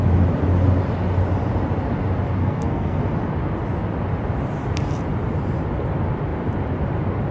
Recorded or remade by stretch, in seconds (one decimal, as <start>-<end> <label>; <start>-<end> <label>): 0.0-2.4 recorded; 2.4-3.0 remade; 3.0-7.3 recorded

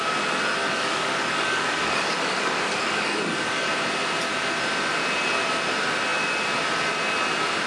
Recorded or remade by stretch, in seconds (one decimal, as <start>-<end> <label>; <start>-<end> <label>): 0.0-0.6 recorded; 0.6-3.7 remade; 3.7-7.7 recorded